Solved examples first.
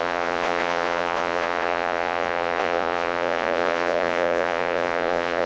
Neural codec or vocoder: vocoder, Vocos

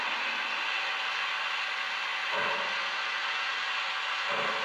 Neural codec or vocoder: none